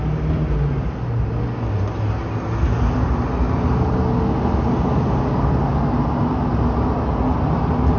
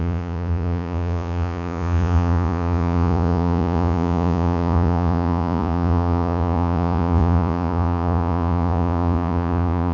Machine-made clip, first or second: second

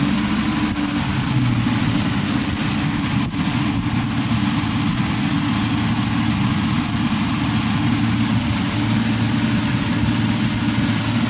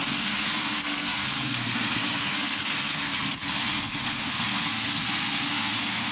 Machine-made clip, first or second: second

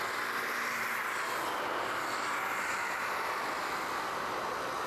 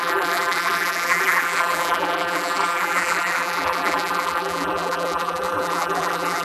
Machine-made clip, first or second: second